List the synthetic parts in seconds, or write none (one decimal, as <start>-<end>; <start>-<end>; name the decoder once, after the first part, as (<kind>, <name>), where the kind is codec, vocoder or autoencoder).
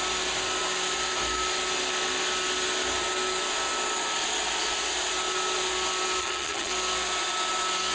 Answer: 6.2-6.7 (vocoder, HiFi-GAN)